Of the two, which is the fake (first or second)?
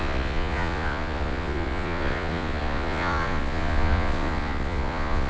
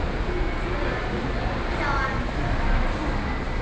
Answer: first